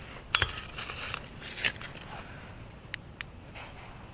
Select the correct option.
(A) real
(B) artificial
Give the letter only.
A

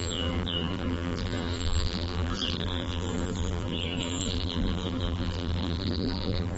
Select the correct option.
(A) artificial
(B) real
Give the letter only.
A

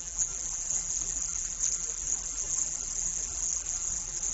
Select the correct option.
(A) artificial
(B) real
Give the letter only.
A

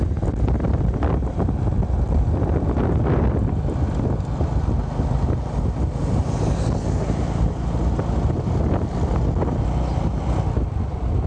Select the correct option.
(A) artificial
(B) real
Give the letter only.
B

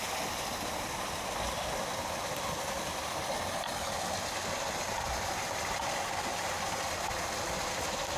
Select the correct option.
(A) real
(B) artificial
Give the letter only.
A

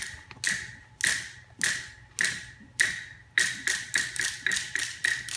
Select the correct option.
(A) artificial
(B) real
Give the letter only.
B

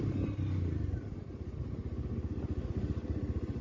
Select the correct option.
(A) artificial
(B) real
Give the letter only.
B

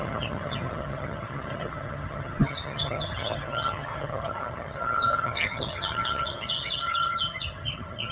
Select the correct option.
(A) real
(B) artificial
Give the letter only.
B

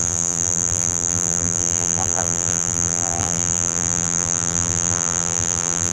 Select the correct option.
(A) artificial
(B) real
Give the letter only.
A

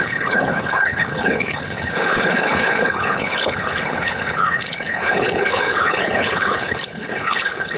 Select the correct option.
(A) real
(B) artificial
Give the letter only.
B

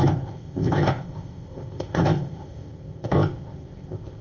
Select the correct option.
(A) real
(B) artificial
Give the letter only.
B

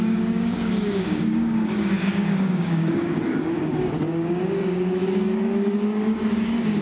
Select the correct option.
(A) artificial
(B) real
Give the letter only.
A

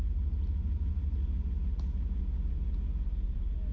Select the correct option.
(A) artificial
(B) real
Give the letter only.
B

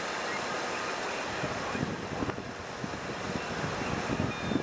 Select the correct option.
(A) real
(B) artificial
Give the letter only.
A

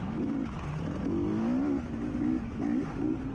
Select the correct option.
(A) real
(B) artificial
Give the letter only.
A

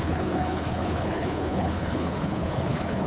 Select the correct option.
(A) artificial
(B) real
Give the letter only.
A